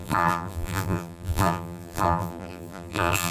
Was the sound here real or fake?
fake